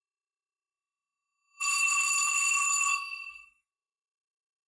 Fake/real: fake